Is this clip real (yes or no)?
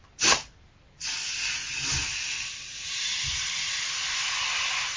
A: yes